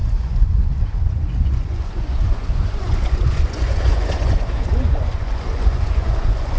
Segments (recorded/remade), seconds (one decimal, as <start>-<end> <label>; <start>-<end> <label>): 0.0-6.6 remade